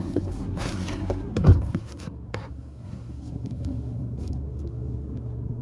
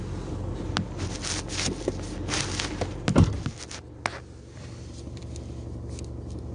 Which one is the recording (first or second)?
second